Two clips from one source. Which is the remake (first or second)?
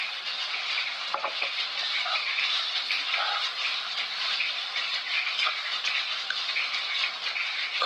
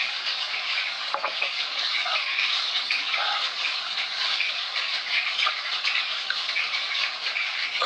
second